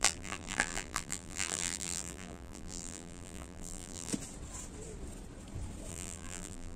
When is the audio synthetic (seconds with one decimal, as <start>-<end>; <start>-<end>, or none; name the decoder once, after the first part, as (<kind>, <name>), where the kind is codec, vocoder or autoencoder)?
0.0-4.1 (vocoder, BigVGAN v2); 5.9-6.8